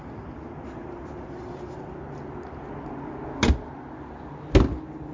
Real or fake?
real